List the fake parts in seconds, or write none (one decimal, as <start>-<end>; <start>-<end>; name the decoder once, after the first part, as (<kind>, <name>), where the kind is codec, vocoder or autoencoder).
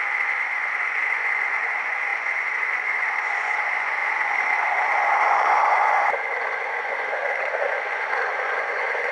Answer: 0.0-9.1 (vocoder, Vocos)